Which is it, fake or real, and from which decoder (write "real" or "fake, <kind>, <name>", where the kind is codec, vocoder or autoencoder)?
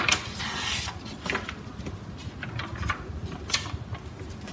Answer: real